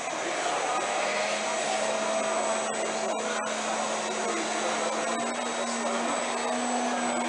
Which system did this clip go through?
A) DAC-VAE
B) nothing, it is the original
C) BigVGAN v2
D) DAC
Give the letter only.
B